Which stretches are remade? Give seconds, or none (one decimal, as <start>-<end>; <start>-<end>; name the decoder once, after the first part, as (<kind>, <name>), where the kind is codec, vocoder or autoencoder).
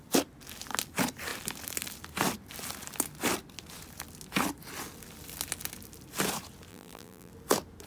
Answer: 6.7-7.3 (vocoder, BigVGAN v2)